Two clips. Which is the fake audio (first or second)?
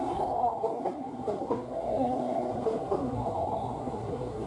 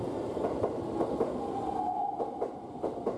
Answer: first